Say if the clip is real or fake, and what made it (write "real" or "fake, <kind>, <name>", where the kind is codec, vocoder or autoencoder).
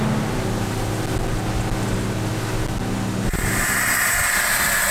real